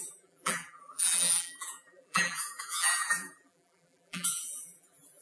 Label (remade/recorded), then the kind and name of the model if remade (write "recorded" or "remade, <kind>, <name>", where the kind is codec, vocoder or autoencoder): remade, vocoder, BigVGAN v2